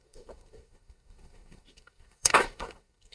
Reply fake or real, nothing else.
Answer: fake